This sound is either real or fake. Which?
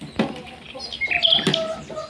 real